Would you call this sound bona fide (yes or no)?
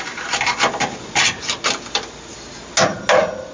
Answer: yes